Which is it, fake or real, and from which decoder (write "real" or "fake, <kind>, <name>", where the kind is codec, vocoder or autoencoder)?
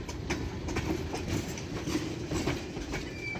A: real